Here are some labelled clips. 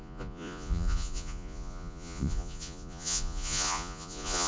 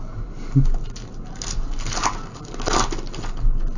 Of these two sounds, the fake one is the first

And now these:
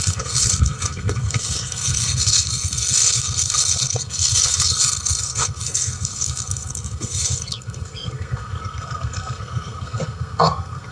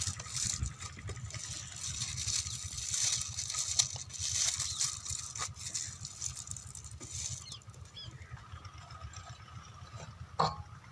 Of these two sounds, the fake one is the first